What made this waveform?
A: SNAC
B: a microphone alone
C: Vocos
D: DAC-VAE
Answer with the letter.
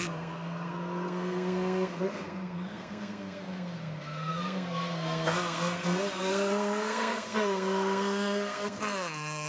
A